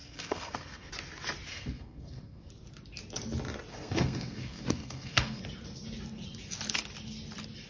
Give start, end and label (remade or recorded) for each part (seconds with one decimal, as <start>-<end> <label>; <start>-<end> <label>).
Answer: 0.0-0.9 remade; 0.9-1.5 recorded; 1.5-2.5 remade; 2.5-3.7 recorded; 3.7-5.4 remade; 5.4-7.7 recorded